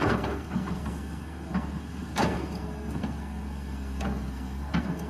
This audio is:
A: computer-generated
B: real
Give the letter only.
A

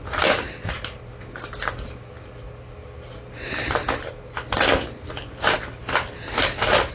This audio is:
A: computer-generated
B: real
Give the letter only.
B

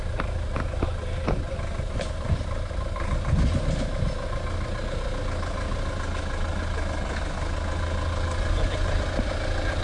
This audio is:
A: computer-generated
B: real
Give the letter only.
B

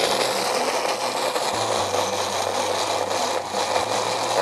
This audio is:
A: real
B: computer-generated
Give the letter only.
A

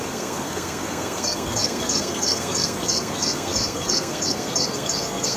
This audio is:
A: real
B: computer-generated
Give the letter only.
B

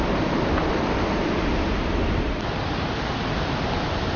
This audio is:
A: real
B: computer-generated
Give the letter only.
A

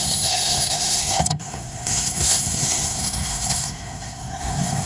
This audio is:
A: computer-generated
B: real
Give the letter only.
A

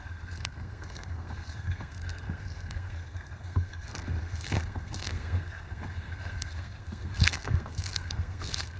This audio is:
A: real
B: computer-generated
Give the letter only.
B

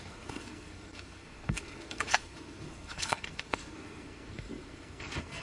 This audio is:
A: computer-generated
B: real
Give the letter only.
A